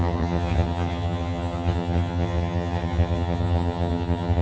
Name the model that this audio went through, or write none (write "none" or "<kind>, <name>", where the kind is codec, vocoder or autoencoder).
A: vocoder, HiFi-GAN